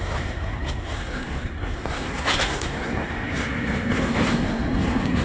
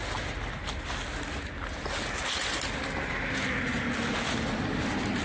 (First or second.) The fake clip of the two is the first